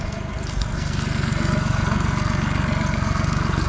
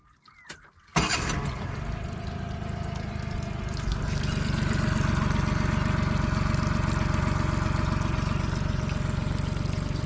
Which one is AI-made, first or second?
first